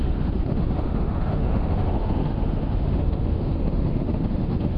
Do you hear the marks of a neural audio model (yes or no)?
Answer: yes